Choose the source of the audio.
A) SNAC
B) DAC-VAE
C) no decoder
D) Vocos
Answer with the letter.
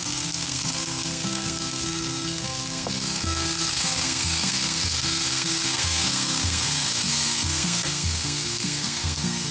A